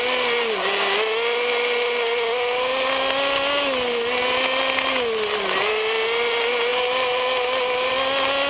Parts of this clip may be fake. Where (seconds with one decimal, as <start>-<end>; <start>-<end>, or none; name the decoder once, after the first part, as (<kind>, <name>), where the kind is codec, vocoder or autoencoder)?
none

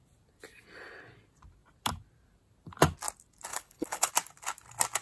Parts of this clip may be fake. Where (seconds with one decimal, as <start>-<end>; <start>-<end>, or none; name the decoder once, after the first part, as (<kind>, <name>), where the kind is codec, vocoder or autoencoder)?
3.5-4.1 (codec, HILCodec)

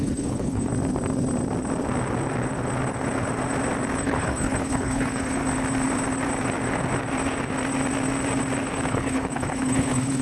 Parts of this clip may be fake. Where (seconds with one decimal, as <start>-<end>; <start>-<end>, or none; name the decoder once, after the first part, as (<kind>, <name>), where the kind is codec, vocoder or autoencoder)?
0.0-0.7 (codec, HILCodec); 4.0-5.4; 8.9-10.2